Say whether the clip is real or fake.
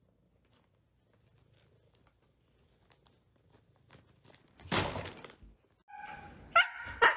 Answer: real